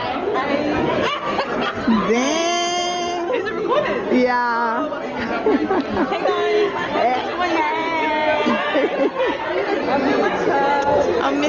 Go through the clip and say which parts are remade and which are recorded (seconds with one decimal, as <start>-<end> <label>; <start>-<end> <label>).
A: 0.0-11.5 recorded